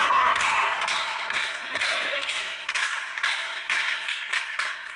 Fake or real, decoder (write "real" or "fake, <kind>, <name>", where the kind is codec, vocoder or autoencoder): fake, codec, SNAC